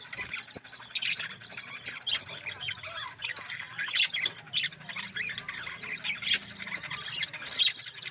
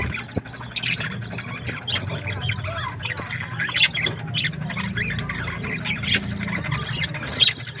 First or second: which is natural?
second